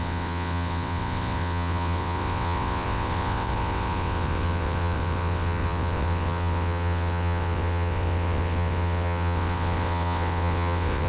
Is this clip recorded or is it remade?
remade